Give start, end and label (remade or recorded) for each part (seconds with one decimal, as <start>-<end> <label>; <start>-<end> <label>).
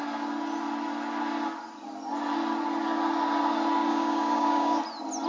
0.0-3.9 recorded; 3.9-4.8 remade; 4.8-5.3 recorded